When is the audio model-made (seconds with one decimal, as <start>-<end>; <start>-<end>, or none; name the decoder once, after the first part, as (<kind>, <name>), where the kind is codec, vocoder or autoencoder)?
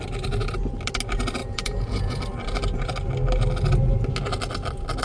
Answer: 1.4-2.2 (vocoder, Vocos)